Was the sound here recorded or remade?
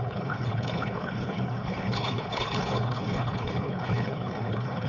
remade